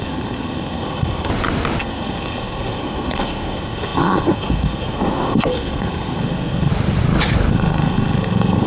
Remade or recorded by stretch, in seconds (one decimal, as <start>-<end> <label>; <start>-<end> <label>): 0.0-1.3 remade; 1.3-1.8 recorded; 1.8-6.7 remade; 6.7-7.5 recorded; 7.5-8.7 remade